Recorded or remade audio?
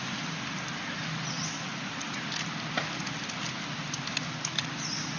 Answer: recorded